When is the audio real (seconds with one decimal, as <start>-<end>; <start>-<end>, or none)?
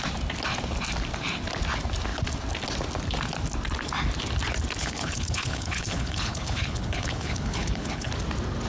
0.0-4.8; 8.1-8.7